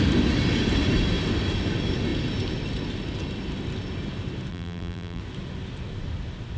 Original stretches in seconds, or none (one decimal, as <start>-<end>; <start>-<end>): 0.0-4.5; 5.2-6.6